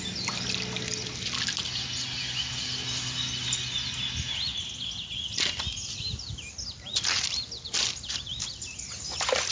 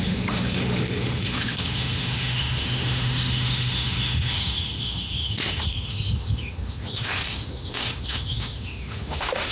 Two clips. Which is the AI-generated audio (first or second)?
second